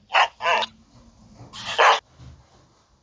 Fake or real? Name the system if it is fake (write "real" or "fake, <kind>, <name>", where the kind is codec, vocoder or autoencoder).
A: real